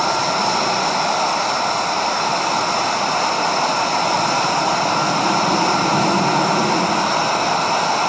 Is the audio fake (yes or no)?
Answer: no